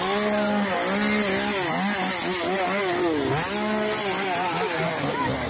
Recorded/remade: recorded